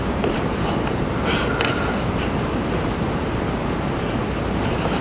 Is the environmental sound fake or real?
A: fake